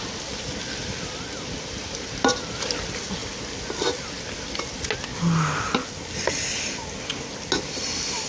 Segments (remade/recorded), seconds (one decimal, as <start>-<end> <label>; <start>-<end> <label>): 0.0-8.3 recorded